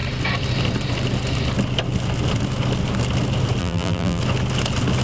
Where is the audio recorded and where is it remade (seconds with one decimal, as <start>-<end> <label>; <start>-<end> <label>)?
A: 0.0-3.6 recorded; 3.6-4.2 remade; 4.2-5.0 recorded